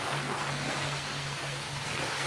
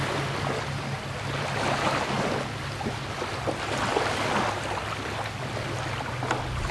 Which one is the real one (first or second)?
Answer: second